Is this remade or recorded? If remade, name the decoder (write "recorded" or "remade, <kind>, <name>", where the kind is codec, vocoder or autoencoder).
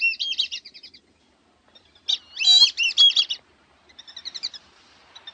recorded